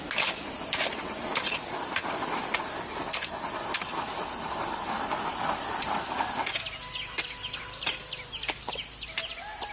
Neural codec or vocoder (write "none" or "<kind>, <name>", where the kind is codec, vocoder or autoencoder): none